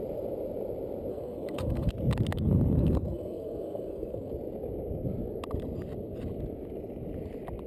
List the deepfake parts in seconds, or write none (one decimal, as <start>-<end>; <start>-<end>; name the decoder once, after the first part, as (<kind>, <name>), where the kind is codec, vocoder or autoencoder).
1.1-1.9 (codec, SNAC); 2.3-4.3